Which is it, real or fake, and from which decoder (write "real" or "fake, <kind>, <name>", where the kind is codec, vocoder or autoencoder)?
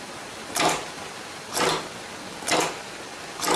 real